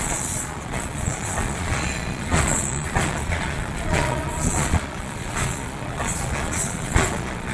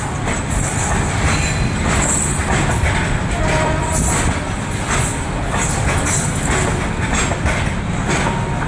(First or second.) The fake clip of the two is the first